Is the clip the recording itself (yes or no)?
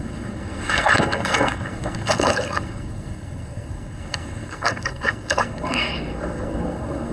no